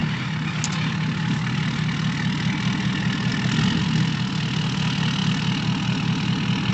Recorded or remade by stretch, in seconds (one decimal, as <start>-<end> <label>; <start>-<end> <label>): 0.0-6.7 recorded